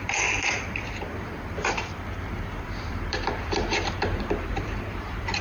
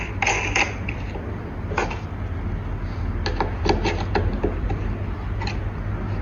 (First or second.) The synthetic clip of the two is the first